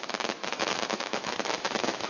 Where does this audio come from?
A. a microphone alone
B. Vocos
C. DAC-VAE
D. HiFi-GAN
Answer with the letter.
C